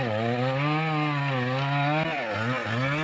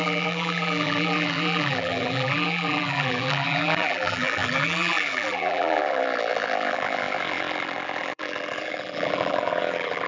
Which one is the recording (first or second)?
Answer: first